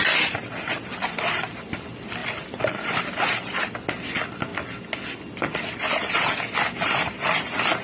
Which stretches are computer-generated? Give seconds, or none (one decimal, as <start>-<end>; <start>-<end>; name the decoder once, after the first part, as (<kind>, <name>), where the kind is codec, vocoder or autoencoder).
none